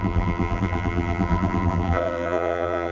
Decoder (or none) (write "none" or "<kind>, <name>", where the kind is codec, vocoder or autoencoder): vocoder, BigVGAN v2